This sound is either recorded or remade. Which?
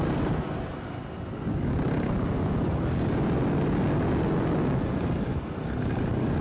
recorded